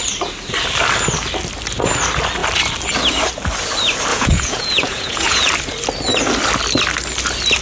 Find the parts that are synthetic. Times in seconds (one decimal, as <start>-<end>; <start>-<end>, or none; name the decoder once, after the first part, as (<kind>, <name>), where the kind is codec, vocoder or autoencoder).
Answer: 4.1-5.5 (vocoder, Vocos)